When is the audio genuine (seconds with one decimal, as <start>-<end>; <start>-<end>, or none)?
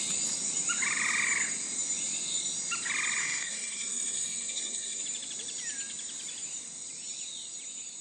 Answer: 0.0-3.2; 5.0-8.0